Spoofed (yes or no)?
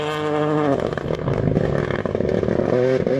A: no